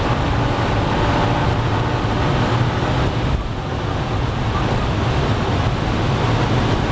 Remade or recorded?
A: recorded